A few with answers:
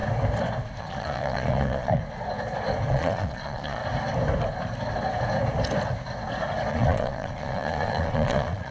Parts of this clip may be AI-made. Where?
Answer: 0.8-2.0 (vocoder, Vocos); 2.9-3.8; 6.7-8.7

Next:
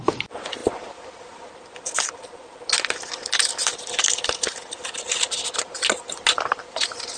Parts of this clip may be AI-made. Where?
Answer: none

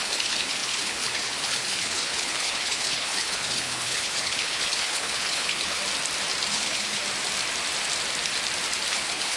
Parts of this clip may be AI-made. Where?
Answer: 0.0-5.8 (codec, HILCodec); 6.5-7.0; 8.9-9.4

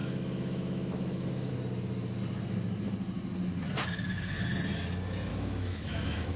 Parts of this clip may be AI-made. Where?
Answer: 0.0-1.5 (autoencoder, DAC-VAE); 5.3-6.4

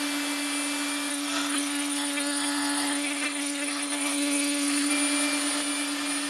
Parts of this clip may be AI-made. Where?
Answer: 1.1-4.9 (codec, SNAC)